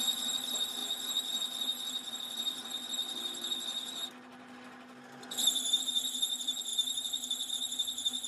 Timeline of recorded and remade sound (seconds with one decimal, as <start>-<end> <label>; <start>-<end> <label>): 0.0-6.7 recorded; 6.7-7.5 remade; 7.5-8.3 recorded